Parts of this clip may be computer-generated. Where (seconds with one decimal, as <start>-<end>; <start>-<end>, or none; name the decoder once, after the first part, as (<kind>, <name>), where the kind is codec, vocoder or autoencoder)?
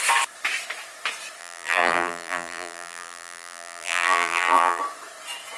1.4-4.8 (vocoder, BigVGAN v2)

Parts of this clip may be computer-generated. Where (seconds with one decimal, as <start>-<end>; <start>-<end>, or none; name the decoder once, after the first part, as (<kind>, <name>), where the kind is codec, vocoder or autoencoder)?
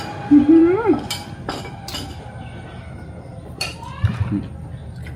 3.3-3.9 (vocoder, BigVGAN v2)